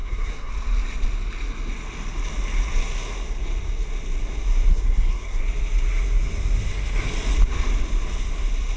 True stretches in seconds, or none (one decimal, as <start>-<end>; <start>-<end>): 0.5-4.7; 5.4-8.8